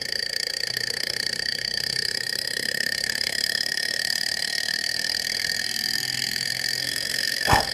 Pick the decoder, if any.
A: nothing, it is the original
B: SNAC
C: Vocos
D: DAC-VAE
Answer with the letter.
B